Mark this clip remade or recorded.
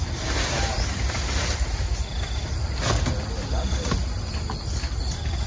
recorded